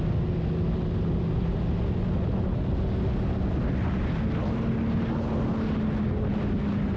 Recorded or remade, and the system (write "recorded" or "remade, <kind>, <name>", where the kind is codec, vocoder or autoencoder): recorded